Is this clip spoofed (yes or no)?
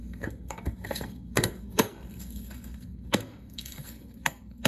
yes